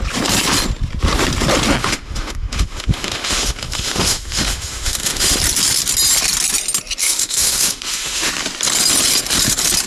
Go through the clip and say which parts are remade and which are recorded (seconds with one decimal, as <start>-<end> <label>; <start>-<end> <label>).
0.0-1.8 recorded; 1.8-5.4 remade; 5.4-7.0 recorded; 7.0-8.3 remade; 8.3-9.9 recorded